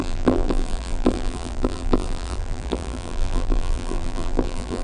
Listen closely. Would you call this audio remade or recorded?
remade